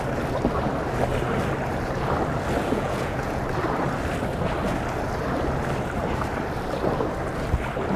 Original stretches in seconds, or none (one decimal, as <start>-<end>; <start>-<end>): 0.0-2.6; 3.4-8.0